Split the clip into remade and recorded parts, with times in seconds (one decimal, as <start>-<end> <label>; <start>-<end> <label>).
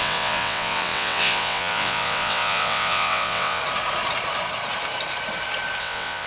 0.0-3.6 remade; 3.6-5.8 recorded; 5.8-6.3 remade